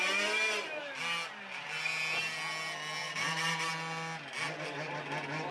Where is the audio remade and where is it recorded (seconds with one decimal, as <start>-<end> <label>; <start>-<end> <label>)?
0.0-3.0 recorded; 3.0-3.7 remade; 3.7-5.5 recorded